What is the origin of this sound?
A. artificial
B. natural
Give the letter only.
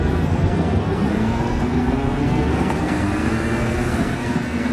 A